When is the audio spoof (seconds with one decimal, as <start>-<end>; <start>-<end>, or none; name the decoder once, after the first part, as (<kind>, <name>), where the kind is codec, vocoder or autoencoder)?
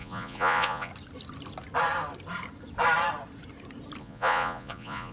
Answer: 0.0-0.9 (vocoder, Vocos); 4.0-5.1